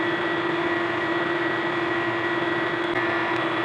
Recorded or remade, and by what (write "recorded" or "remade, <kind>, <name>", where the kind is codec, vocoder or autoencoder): recorded